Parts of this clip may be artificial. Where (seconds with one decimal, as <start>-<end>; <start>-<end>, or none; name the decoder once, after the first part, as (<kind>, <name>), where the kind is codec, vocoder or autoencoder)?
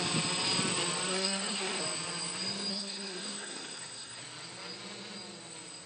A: 1.1-1.8 (codec, SNAC); 2.7-4.2